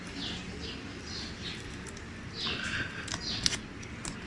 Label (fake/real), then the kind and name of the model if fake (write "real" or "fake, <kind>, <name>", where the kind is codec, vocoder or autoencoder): real